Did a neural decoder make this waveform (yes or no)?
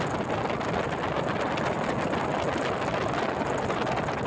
no